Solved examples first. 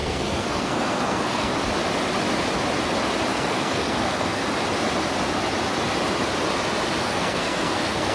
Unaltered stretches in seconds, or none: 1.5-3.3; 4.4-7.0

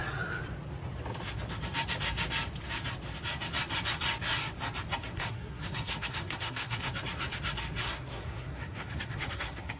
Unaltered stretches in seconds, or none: 0.0-5.0; 6.9-7.8